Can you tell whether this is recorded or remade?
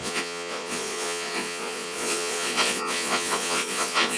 remade